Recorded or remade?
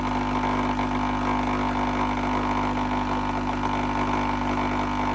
recorded